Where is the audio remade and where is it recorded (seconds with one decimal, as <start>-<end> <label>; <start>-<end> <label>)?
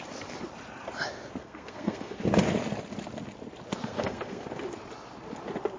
0.0-1.4 recorded; 1.4-2.2 remade; 2.2-3.8 recorded; 3.8-4.5 remade; 4.5-5.8 recorded